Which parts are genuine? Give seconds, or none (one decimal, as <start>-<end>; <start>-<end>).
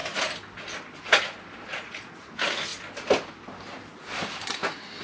0.0-1.7; 2.3-5.0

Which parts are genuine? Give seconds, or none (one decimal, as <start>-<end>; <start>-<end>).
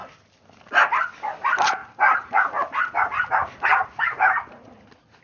0.0-5.2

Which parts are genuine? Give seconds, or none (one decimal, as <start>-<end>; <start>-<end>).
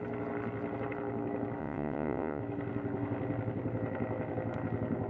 0.0-1.6; 2.4-5.1